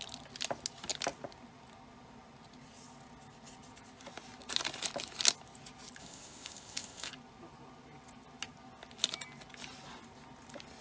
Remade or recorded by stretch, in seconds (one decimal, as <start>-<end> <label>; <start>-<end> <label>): 0.0-6.0 recorded; 6.0-7.1 remade; 7.1-10.8 recorded